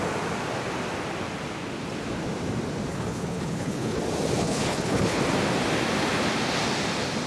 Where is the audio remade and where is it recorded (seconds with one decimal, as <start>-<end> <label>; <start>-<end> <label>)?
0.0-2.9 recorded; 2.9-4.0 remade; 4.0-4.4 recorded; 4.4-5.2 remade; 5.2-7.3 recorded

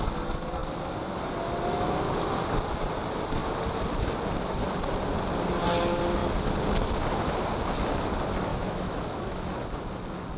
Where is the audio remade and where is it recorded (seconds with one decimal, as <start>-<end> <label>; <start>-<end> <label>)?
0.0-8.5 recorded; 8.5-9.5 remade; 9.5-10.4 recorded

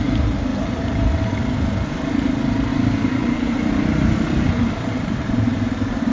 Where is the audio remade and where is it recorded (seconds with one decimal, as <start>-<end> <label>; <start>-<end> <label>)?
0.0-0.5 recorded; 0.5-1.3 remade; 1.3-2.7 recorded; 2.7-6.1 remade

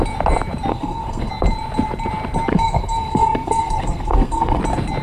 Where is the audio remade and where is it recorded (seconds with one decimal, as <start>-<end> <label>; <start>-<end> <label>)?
0.0-0.7 recorded; 0.7-1.3 remade; 1.3-2.5 recorded; 2.5-4.6 remade; 4.6-5.0 recorded

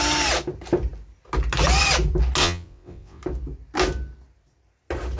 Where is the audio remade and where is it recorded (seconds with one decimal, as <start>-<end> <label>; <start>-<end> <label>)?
0.0-2.4 recorded; 2.4-3.2 remade; 3.2-5.2 recorded

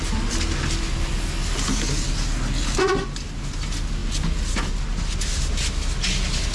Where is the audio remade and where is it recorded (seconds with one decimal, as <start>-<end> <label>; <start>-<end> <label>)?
0.0-6.5 recorded

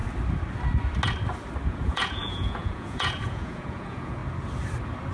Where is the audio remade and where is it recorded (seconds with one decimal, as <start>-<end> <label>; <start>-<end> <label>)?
0.0-1.7 recorded; 1.7-4.2 remade; 4.2-5.1 recorded

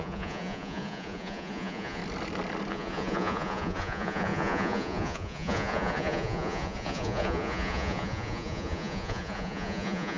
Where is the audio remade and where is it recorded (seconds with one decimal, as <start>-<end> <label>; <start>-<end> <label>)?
0.0-2.0 remade; 2.0-2.7 recorded; 2.7-10.2 remade